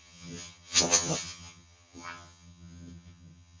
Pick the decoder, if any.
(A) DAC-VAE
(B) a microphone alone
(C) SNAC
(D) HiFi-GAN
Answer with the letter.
D